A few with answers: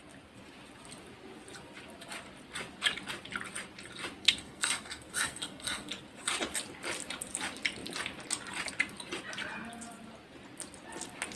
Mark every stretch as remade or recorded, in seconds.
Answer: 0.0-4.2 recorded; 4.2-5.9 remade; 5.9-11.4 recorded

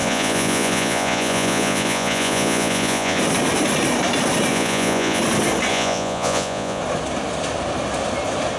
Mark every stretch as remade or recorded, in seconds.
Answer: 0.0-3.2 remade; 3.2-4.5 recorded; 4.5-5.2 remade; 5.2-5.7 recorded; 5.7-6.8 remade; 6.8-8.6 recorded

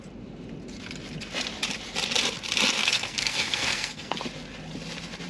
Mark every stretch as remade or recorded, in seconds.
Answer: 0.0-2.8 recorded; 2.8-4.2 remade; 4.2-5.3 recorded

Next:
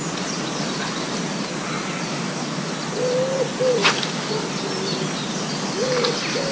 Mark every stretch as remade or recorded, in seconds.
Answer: 0.0-2.1 recorded; 2.1-2.7 remade; 2.7-3.8 recorded; 3.8-4.3 remade; 4.3-6.5 recorded